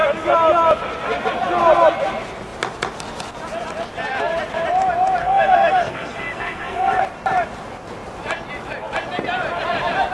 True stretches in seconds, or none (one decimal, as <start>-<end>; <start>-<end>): 0.0-5.2; 7.0-10.1